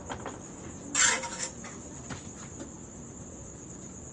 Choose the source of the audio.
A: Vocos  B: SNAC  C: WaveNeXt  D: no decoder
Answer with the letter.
D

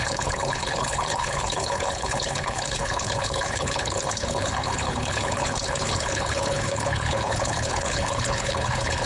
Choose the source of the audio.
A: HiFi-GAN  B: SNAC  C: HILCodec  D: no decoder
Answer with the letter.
C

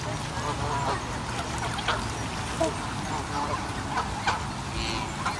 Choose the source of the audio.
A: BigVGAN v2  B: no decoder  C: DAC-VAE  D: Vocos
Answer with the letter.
B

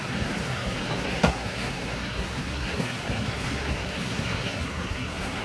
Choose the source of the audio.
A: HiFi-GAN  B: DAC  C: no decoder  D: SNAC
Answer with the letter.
D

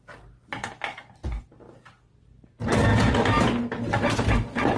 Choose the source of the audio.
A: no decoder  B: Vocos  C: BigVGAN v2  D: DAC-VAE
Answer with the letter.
A